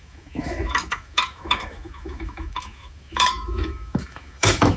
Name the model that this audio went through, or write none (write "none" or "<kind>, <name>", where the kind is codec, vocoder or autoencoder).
autoencoder, DAC-VAE